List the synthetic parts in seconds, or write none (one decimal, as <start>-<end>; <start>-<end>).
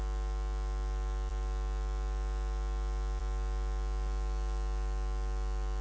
none